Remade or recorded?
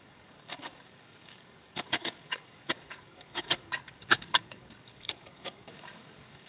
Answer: remade